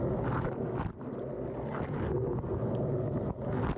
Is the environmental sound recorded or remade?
recorded